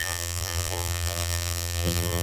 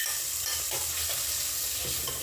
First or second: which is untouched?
second